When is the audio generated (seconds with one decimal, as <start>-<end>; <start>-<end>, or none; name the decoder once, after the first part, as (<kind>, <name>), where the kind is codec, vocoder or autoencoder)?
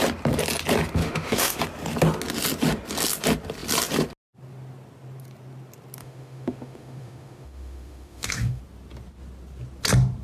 1.0-1.6 (autoencoder, DAC-VAE); 6.0-8.6